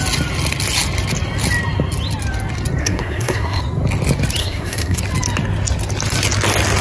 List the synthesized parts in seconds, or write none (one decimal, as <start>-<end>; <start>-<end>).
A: 2.8-3.6; 4.4-5.0